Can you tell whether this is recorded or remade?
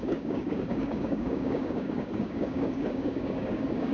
remade